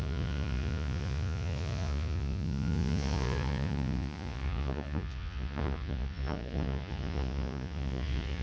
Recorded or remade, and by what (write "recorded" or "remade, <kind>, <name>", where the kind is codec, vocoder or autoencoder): remade, vocoder, Vocos